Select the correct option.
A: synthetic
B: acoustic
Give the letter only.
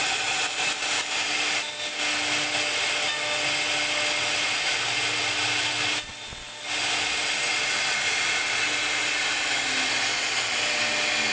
B